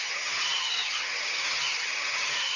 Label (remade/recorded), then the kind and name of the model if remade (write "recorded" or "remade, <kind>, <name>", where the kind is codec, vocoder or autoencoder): remade, vocoder, HiFi-GAN